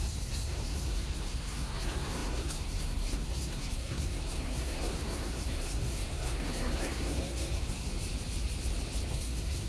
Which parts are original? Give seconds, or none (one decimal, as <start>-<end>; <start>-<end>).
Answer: 7.9-9.1